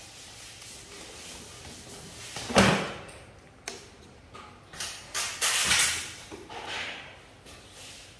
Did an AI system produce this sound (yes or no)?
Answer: no